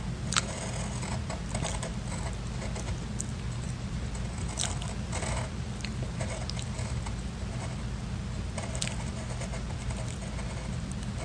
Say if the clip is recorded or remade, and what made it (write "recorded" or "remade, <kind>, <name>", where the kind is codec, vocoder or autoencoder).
recorded